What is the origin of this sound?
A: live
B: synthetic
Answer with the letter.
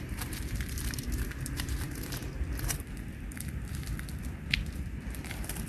B